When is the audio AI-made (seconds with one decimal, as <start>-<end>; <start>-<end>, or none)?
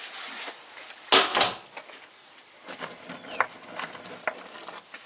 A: 1.3-4.4